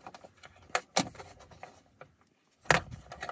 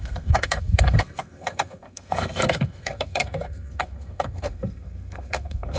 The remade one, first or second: second